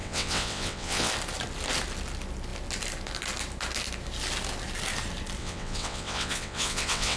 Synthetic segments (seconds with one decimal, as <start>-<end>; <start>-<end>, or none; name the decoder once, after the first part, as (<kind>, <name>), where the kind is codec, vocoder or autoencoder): 0.0-1.1 (vocoder, WaveNeXt); 5.4-7.2